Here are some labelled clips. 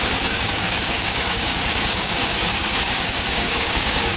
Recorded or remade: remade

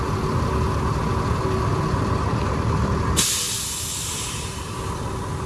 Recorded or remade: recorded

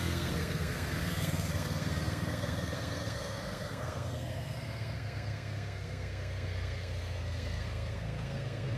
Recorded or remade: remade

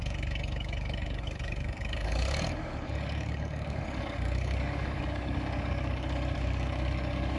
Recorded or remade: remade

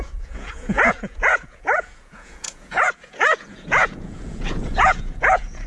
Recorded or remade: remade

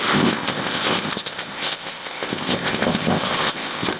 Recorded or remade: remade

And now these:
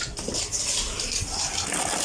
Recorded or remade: recorded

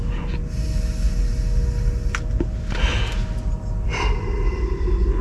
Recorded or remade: recorded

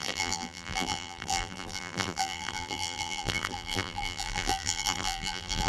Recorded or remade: remade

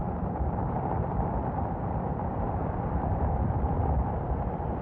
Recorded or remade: recorded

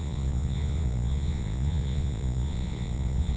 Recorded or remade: remade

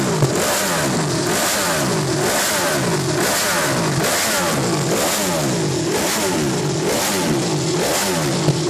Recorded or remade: recorded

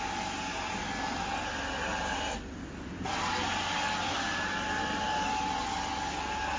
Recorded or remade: recorded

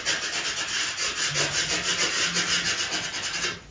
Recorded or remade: recorded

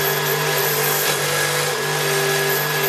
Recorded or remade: recorded